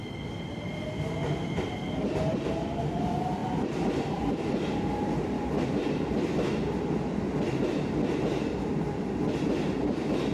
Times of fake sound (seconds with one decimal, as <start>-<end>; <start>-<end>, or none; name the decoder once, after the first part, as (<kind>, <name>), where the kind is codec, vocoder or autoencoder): none